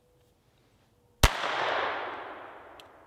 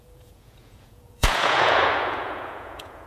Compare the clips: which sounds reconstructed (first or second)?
second